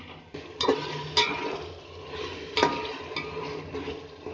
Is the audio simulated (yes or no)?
no